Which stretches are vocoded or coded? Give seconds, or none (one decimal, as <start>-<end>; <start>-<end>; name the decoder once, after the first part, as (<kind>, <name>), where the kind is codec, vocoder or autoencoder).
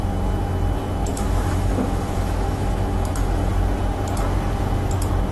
1.1-3.5 (autoencoder, DAC-VAE)